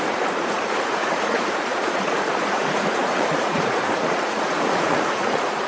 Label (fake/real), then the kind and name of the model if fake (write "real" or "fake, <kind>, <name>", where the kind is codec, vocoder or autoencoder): fake, vocoder, Vocos